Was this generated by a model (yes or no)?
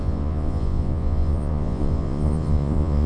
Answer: yes